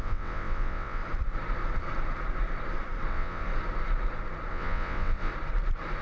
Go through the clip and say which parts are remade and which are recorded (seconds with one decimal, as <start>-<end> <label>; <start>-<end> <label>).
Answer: 0.0-1.0 remade; 1.0-3.1 recorded; 3.1-3.5 remade; 3.5-4.5 recorded; 4.5-5.3 remade; 5.3-6.0 recorded